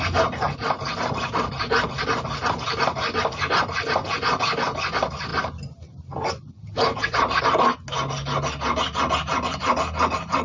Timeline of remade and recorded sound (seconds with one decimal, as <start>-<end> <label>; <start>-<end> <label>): 0.0-10.4 recorded